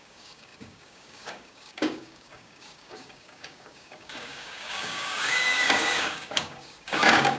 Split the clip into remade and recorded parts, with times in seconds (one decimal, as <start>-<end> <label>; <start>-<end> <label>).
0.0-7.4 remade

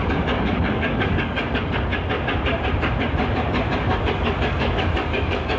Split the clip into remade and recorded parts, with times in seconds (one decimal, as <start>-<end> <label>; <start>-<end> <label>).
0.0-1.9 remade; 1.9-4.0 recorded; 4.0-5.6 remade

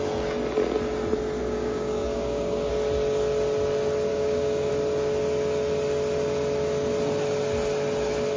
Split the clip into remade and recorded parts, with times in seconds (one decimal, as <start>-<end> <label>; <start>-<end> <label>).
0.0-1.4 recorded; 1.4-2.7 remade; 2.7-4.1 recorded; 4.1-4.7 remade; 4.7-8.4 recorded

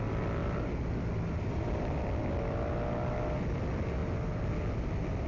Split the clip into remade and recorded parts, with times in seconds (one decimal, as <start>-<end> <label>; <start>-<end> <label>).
0.0-5.3 recorded